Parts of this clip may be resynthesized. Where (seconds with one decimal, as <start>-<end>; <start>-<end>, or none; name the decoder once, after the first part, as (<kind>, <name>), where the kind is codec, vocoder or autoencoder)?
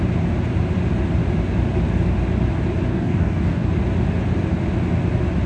2.9-3.7 (codec, DAC)